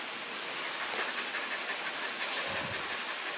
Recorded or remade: recorded